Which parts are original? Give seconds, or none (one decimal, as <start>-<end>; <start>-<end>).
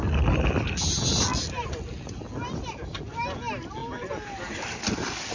0.0-5.3